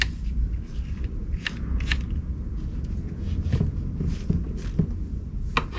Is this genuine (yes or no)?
yes